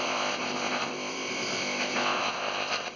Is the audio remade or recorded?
remade